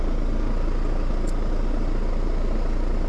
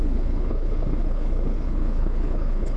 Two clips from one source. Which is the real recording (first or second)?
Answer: first